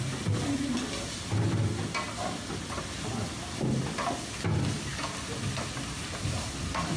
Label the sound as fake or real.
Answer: real